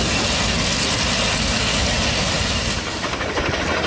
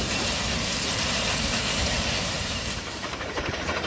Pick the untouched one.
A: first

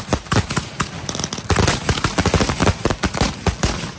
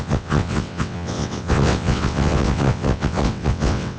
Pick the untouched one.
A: first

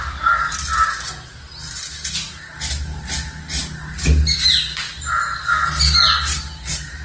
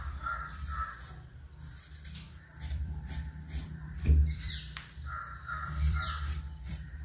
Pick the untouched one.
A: first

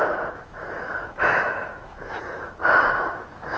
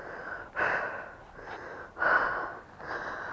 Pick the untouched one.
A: second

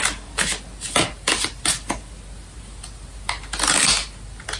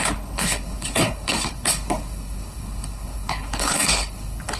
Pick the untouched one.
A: first